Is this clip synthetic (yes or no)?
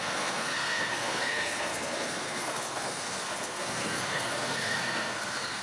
yes